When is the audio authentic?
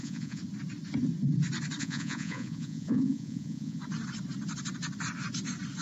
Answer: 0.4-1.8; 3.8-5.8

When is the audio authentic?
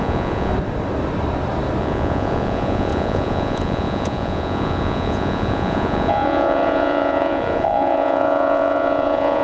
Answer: 0.5-1.8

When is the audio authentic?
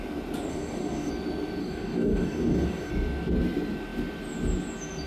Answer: 0.0-0.5; 1.1-1.6; 2.9-5.1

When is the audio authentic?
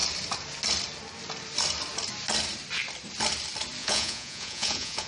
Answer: 0.0-3.8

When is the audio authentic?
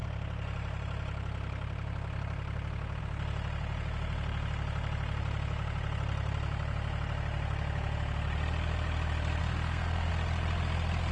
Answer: 0.0-9.4; 10.1-11.1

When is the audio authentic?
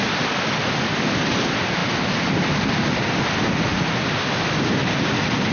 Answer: 0.0-5.5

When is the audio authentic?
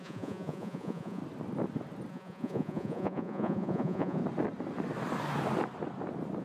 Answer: 1.2-2.1; 4.2-6.4